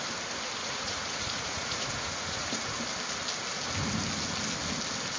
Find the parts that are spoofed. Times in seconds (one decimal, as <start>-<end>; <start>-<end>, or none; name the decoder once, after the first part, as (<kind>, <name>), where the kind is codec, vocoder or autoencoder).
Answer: 0.6-2.8 (vocoder, Vocos)